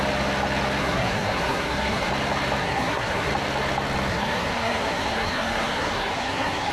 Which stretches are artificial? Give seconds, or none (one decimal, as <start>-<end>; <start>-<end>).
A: 0.8-2.1; 2.6-3.3; 4.1-6.7